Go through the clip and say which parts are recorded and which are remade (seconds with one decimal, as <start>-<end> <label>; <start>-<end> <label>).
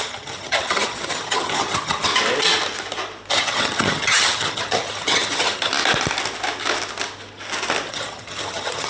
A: 0.0-2.1 remade; 2.1-3.3 recorded; 3.3-5.7 remade; 5.7-7.9 recorded; 7.9-8.9 remade